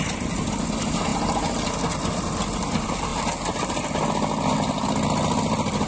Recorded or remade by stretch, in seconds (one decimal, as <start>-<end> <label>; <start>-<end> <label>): 0.0-5.9 recorded